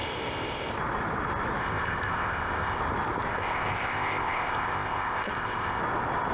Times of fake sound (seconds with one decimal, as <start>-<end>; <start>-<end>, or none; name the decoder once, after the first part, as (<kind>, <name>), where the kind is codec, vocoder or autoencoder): 0.0-0.7 (codec, ZipCodec); 1.6-2.8; 3.3-5.8